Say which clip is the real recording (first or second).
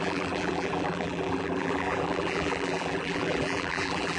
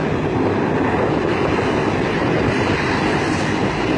second